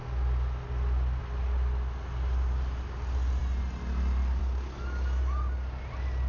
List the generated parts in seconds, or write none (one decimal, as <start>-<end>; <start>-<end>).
none